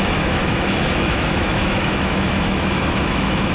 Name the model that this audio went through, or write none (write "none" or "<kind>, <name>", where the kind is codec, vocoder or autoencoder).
autoencoder, DAC-VAE